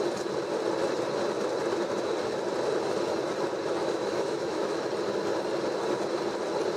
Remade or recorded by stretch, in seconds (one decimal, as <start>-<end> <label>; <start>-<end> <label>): 0.0-3.8 recorded; 3.8-4.8 remade; 4.8-6.8 recorded